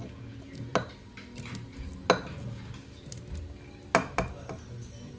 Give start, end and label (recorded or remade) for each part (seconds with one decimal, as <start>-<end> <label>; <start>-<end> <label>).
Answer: 0.0-5.2 recorded